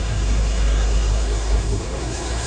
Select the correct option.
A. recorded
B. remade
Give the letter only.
B